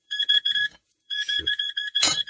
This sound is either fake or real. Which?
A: fake